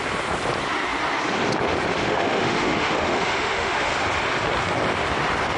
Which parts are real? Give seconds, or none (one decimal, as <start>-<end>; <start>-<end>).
0.0-2.0; 3.9-5.6